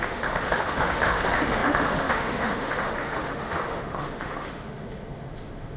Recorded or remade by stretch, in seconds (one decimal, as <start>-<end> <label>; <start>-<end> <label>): 0.0-5.8 remade